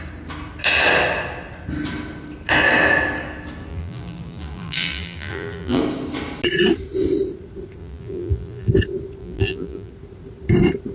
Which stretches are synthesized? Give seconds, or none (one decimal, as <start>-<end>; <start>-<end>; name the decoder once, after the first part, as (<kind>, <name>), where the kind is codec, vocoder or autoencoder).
3.7-5.8 (vocoder, BigVGAN v2); 7.8-8.7; 9.2-9.9